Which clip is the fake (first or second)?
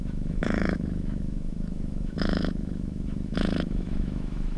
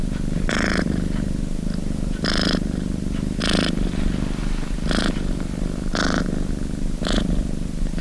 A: first